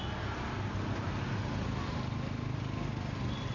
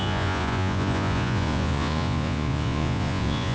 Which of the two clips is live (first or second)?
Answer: first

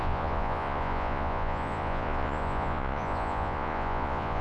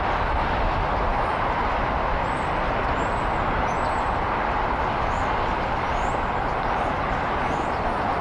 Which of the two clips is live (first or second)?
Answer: second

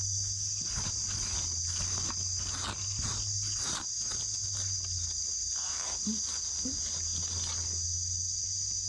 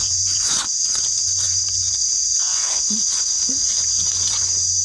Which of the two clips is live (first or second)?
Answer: first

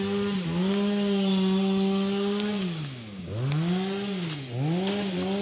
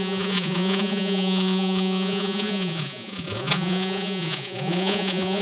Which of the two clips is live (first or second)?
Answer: first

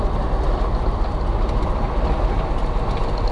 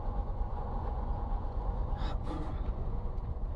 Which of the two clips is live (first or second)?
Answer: first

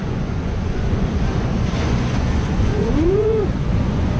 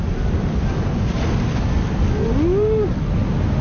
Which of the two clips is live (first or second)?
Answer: second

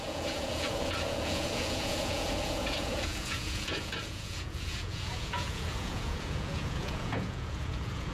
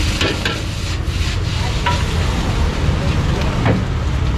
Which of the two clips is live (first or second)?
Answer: second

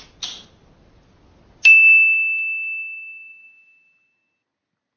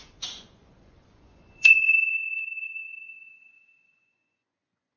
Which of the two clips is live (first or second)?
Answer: first